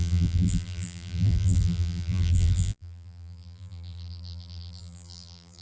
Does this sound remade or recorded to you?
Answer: remade